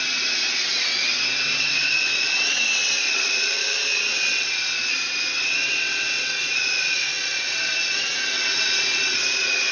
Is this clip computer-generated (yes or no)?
yes